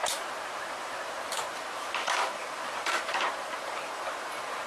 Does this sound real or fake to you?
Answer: fake